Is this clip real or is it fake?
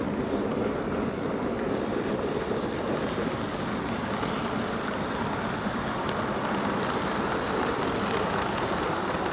real